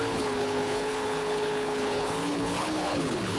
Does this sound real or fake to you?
fake